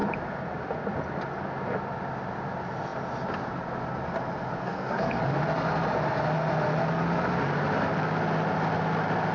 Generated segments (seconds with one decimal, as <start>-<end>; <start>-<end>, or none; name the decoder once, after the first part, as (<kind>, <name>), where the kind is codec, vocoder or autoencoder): 4.6-5.2 (codec, SNAC)